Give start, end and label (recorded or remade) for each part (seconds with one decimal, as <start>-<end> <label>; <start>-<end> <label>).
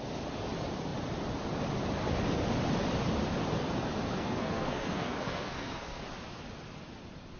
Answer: 0.0-4.1 recorded; 4.1-6.0 remade; 6.0-7.4 recorded